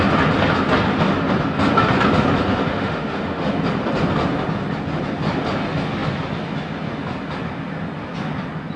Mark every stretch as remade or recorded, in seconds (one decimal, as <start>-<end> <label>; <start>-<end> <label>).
0.0-2.7 recorded; 2.7-3.5 remade; 3.5-8.8 recorded